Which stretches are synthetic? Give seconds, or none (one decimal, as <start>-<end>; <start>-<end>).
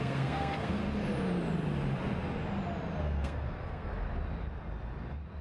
0.0-0.8; 3.0-3.9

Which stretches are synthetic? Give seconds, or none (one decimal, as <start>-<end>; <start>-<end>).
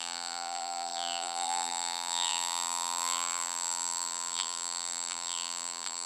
0.0-6.1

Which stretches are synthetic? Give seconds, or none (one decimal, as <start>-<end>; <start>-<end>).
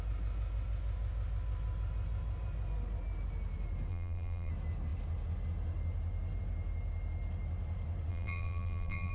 3.9-4.5; 8.1-9.1